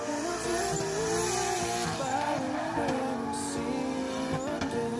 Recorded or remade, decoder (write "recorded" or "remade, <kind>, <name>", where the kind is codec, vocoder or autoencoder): recorded